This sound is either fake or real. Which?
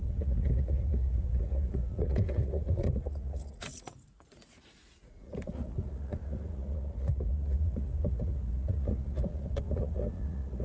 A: fake